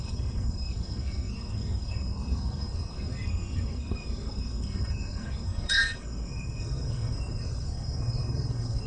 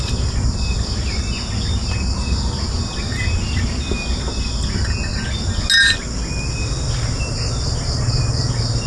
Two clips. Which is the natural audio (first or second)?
second